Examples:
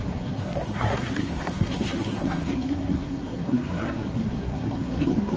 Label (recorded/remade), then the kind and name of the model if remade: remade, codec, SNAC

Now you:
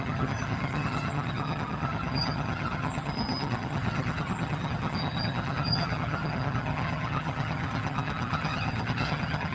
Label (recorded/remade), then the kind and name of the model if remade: remade, vocoder, HiFi-GAN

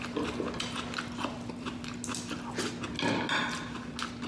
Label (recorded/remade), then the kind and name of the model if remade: recorded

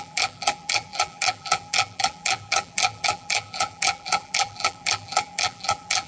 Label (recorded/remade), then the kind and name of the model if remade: remade, vocoder, BigVGAN v2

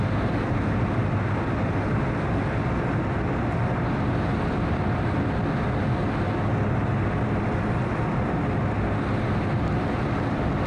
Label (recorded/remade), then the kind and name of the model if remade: recorded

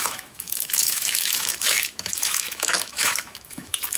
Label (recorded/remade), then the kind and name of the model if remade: remade, autoencoder, DAC-VAE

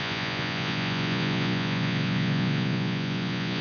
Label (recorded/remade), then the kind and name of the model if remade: remade, vocoder, Vocos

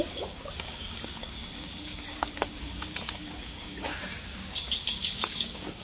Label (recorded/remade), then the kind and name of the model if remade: remade, codec, DAC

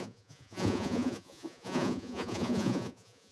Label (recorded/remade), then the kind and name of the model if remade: remade, vocoder, Vocos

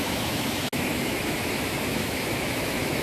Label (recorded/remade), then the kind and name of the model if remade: remade, autoencoder, DAC-VAE